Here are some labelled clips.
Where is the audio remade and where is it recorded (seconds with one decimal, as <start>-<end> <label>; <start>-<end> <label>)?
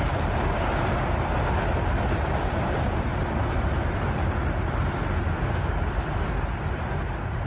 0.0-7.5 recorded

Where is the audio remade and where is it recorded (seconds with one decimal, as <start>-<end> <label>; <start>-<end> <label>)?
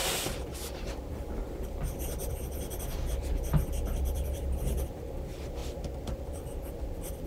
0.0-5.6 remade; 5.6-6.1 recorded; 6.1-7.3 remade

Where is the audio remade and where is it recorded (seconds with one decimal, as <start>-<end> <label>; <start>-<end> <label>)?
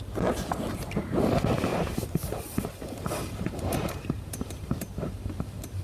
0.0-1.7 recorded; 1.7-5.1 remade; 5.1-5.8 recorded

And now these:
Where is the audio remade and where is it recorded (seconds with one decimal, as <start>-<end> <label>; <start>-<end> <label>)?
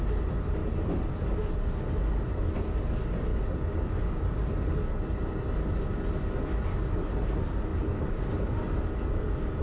0.0-7.7 recorded; 7.7-9.2 remade; 9.2-9.6 recorded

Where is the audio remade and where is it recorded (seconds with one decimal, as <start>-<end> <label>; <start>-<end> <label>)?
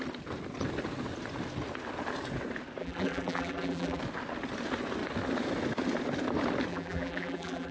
0.0-2.8 recorded; 2.8-4.0 remade; 4.0-6.7 recorded; 6.7-7.7 remade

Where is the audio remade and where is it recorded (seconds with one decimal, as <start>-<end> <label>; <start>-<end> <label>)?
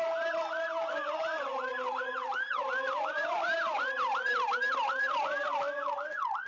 0.0-1.7 recorded; 1.7-5.6 remade; 5.6-6.5 recorded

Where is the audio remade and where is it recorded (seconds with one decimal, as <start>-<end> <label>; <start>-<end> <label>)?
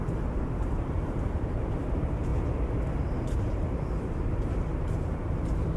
0.0-2.3 remade; 2.3-3.0 recorded; 3.0-5.8 remade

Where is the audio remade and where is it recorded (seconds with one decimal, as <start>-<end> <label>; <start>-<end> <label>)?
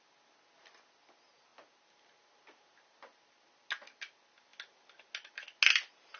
0.0-6.2 recorded